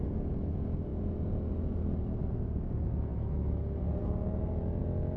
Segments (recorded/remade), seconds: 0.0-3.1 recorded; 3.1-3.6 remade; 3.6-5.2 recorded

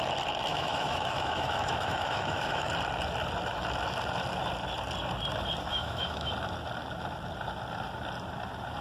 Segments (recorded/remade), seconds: 0.0-0.5 recorded; 0.5-2.7 remade; 2.7-5.7 recorded; 5.7-6.3 remade; 6.3-8.8 recorded

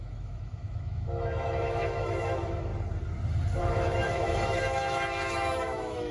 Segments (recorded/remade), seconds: 0.0-2.7 remade; 2.7-3.6 recorded; 3.6-6.1 remade

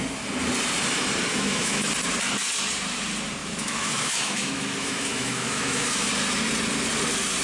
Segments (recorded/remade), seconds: 0.0-1.3 recorded; 1.3-1.9 remade; 1.9-3.4 recorded; 3.4-6.1 remade; 6.1-7.4 recorded

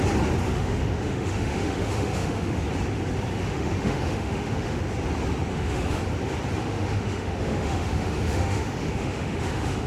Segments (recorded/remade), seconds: 0.0-0.4 recorded; 0.4-2.6 remade; 2.6-3.3 recorded; 3.3-4.8 remade; 4.8-5.5 recorded; 5.5-6.0 remade; 6.0-6.6 recorded; 6.6-9.9 remade